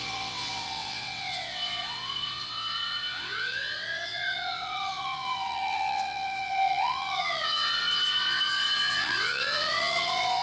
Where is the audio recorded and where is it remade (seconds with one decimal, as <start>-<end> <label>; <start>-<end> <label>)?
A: 0.0-10.4 remade